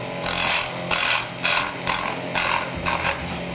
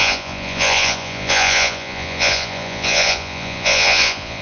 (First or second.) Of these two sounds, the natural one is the first